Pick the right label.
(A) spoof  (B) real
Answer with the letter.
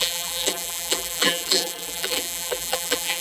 A